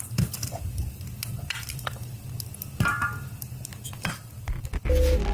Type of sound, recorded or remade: recorded